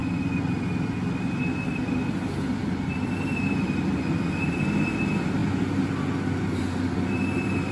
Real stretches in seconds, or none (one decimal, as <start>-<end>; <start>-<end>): 0.0-1.8; 5.4-6.3